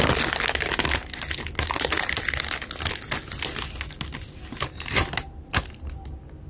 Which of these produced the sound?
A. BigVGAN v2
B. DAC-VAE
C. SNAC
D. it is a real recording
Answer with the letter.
D